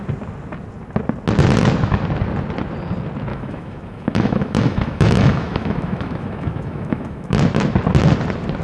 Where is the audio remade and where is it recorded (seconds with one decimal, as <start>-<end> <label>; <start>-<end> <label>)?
0.0-3.3 recorded; 3.3-7.4 remade; 7.4-8.6 recorded